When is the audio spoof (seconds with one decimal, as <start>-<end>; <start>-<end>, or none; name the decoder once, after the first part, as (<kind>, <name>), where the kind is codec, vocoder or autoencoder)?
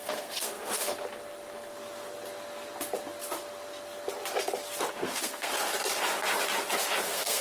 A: 0.0-0.7 (codec, SNAC); 4.9-5.5; 7.0-7.4